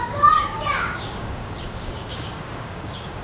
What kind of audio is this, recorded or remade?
remade